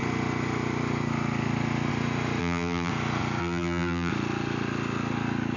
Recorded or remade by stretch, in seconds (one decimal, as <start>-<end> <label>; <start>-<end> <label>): 0.0-2.4 recorded; 2.4-2.9 remade; 2.9-3.4 recorded; 3.4-4.1 remade; 4.1-5.6 recorded